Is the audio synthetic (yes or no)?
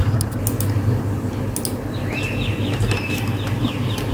no